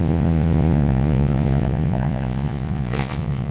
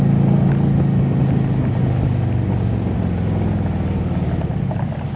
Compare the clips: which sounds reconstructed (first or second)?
first